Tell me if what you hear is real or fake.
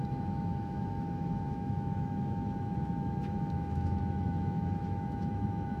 fake